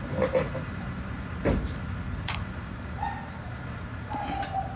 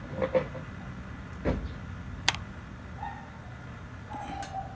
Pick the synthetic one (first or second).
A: first